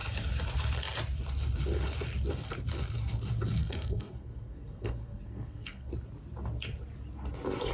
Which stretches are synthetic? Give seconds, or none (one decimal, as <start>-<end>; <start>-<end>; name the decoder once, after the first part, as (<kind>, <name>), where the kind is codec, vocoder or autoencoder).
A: 3.6-5.9 (codec, SNAC)